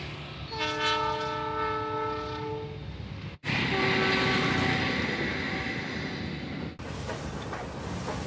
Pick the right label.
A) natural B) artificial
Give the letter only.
A